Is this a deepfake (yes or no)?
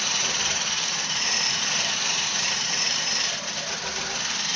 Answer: yes